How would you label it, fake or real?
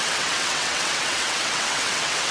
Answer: fake